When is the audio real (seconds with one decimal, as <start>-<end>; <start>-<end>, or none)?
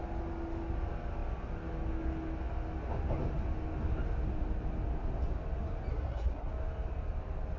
0.0-5.9; 6.5-7.6